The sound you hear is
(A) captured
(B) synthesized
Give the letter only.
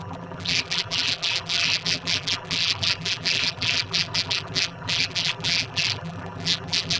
B